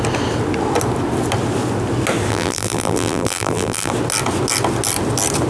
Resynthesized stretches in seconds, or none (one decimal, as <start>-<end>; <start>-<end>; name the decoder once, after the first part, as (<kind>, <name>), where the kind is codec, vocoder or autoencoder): 2.3-3.9 (vocoder, BigVGAN v2)